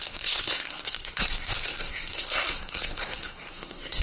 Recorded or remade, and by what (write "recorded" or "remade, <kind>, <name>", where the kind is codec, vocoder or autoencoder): remade, codec, SNAC